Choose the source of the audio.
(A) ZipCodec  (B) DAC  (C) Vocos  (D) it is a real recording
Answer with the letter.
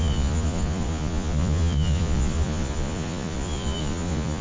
C